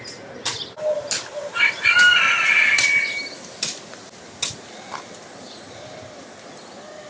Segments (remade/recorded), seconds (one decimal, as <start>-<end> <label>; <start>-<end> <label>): 0.0-7.1 recorded